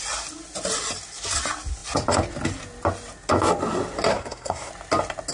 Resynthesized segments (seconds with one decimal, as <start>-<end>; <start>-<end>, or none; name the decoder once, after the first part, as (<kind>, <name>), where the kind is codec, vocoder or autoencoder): 4.1-4.7 (codec, SNAC)